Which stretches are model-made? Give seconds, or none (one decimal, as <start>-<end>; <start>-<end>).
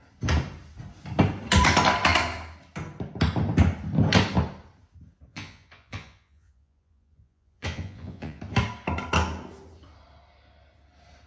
5.3-8.4